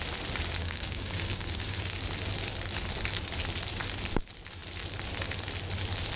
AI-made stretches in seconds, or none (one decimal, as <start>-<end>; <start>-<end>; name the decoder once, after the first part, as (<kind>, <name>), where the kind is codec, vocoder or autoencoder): 0.6-1.8 (codec, DAC)